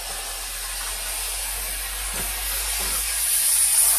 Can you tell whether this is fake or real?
real